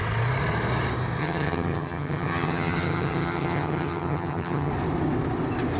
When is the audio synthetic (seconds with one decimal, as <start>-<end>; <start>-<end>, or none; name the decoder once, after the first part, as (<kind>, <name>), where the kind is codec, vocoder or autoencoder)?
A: 1.2-4.7 (vocoder, HiFi-GAN)